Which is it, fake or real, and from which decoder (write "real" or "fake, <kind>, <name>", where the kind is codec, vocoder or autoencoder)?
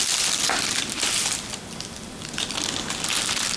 real